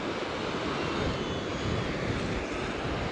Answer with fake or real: real